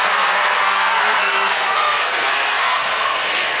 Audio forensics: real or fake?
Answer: fake